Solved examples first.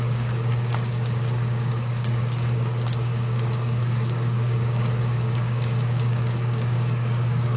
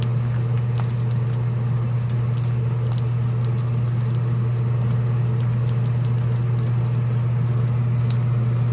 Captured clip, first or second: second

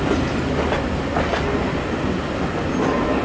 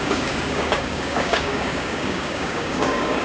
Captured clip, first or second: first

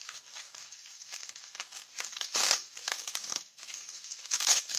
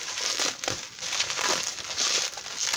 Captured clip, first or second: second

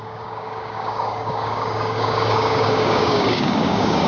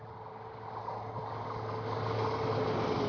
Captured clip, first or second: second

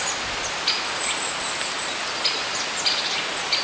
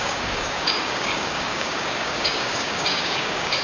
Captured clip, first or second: first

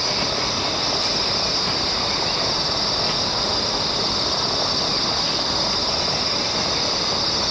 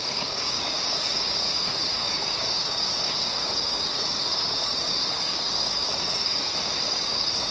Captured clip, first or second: first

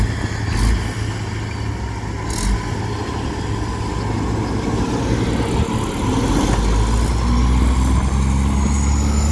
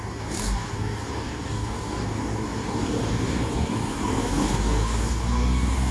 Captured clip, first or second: first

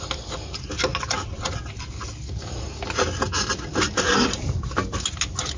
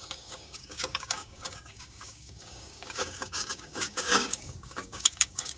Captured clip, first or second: first